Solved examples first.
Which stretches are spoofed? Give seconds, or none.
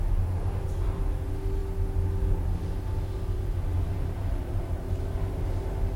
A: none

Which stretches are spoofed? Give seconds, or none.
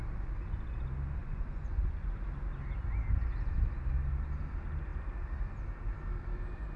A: 1.2-2.2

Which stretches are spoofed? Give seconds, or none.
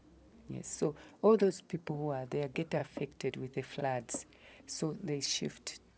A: 1.1-1.9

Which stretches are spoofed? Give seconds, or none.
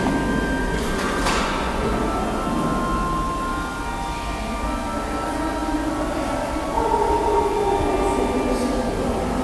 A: 0.6-2.0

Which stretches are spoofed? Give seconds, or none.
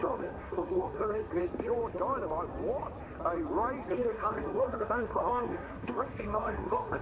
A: 0.0-1.4; 3.9-7.0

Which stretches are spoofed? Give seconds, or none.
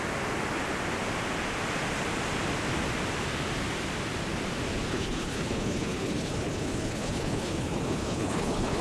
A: 4.9-8.8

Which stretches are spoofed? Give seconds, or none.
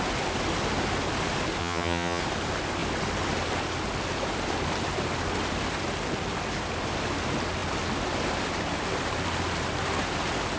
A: 1.6-2.2